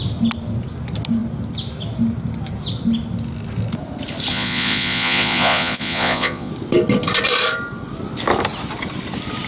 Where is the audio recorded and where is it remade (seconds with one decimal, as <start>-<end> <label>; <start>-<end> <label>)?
0.0-4.3 recorded; 4.3-6.5 remade; 6.5-9.5 recorded